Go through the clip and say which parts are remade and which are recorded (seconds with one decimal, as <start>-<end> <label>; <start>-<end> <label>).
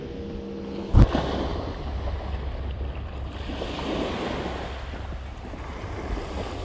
0.0-6.6 recorded